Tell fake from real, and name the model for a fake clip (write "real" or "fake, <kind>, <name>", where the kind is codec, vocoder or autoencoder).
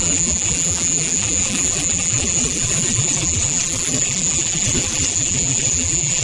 fake, vocoder, BigVGAN v2